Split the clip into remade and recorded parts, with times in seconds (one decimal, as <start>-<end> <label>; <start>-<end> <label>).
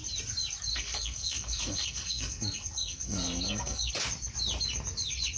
0.0-0.7 recorded; 0.7-3.9 remade; 3.9-5.4 recorded